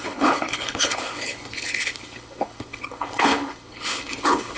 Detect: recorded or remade remade